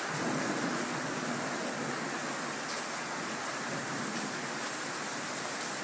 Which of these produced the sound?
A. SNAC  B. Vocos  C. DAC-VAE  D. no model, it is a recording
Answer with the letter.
D